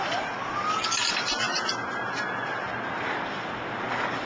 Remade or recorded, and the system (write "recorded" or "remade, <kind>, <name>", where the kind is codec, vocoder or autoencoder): recorded